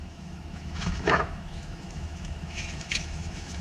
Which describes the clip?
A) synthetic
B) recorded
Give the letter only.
A